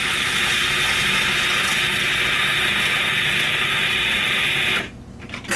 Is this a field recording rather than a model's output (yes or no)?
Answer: yes